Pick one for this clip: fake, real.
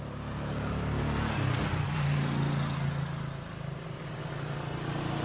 real